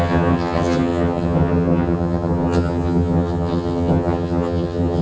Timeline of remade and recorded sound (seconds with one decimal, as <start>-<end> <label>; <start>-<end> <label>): 0.0-5.0 remade